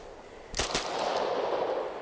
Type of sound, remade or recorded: recorded